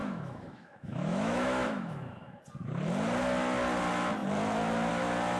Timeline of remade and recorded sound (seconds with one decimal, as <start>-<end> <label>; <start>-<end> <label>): 0.0-2.4 remade; 2.4-5.4 recorded